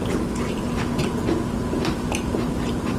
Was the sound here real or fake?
real